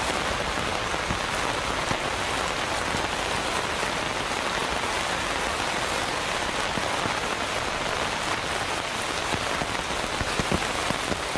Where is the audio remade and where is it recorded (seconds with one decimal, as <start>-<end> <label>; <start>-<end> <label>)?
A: 0.0-11.4 recorded